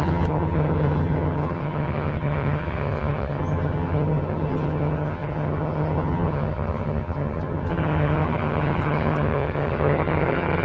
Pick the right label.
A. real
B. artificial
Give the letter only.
B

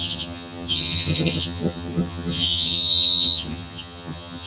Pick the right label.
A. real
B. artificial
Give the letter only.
B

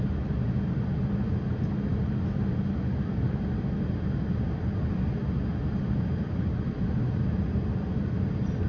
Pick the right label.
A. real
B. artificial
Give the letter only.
A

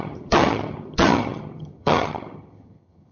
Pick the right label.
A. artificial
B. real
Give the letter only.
A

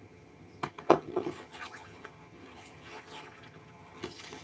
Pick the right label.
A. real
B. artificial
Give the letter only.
B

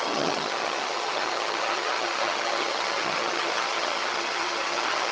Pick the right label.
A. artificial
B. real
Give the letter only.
A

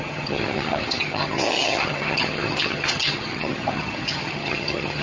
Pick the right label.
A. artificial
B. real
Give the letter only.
A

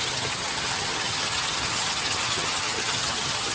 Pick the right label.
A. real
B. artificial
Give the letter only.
B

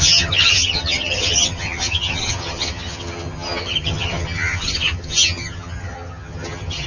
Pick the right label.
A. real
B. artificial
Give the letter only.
B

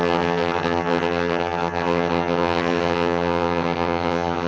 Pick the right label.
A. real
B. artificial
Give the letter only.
B